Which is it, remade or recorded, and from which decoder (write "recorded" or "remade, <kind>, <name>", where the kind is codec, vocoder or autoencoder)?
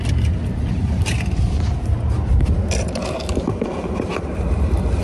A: recorded